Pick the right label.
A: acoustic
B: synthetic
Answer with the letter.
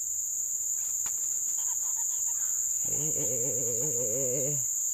A